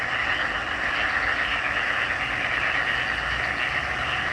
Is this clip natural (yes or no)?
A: yes